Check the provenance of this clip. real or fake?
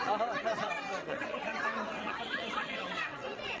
fake